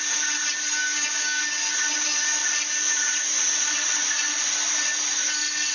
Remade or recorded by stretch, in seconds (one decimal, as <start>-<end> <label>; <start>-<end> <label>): 0.0-0.8 recorded; 0.8-1.4 remade; 1.4-5.7 recorded

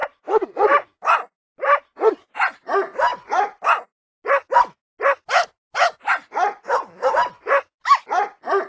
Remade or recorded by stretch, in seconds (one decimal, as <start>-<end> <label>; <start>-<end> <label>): 0.0-3.1 recorded; 3.1-3.7 remade; 3.7-8.7 recorded

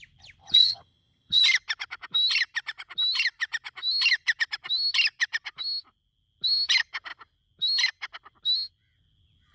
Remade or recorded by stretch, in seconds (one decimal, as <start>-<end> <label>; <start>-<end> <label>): 0.0-0.4 recorded; 0.4-1.4 remade; 1.4-9.5 recorded

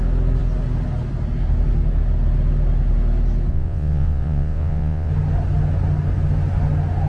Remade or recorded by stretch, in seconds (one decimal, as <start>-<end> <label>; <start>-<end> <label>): 0.0-3.5 recorded; 3.5-5.1 remade; 5.1-7.1 recorded

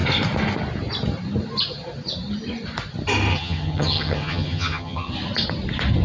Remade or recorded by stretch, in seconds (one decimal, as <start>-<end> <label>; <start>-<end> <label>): 0.0-3.3 recorded; 3.3-5.1 remade; 5.1-6.0 recorded